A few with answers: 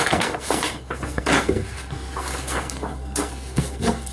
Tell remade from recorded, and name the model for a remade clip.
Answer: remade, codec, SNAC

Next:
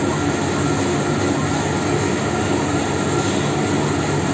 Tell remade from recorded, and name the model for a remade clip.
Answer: recorded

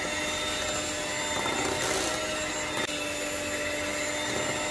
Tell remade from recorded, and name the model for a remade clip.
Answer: recorded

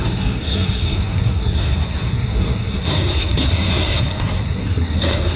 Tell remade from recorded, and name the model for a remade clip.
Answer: remade, codec, SNAC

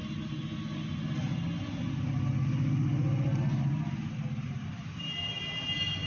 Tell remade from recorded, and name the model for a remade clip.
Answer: recorded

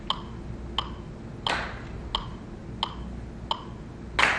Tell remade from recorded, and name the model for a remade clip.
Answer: recorded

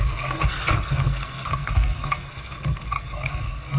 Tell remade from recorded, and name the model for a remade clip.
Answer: remade, codec, SNAC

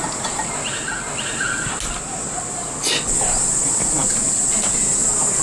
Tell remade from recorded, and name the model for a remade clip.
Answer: recorded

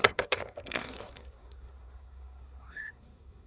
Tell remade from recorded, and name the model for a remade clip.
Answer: remade, codec, SNAC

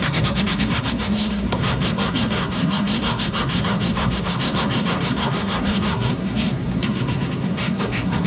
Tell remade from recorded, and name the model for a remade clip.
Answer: remade, codec, SNAC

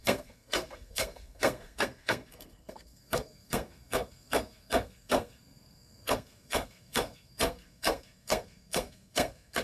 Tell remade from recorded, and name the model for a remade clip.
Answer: remade, codec, SNAC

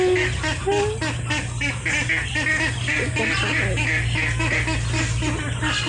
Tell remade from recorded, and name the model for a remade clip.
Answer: recorded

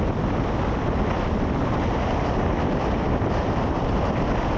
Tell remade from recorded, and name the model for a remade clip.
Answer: recorded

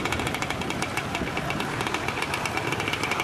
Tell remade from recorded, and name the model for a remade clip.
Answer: recorded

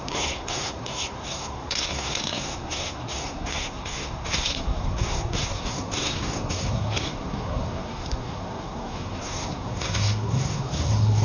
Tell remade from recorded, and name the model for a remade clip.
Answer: remade, codec, SNAC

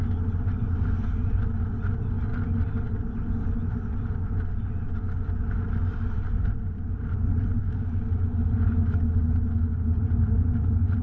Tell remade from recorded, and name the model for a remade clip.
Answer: recorded